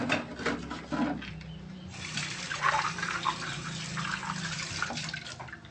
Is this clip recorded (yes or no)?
yes